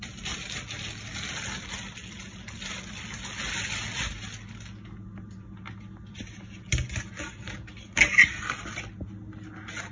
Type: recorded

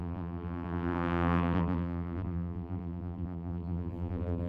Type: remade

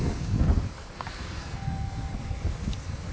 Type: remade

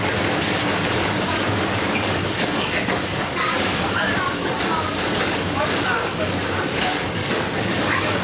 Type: remade